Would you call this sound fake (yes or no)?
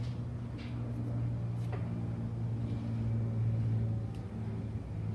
no